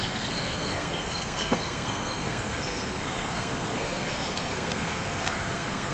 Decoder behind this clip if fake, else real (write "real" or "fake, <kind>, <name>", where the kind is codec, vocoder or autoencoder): fake, codec, SNAC